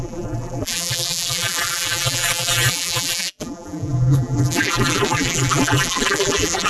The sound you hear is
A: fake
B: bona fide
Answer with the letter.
A